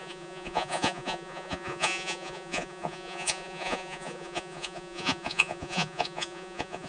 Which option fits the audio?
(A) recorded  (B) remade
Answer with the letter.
B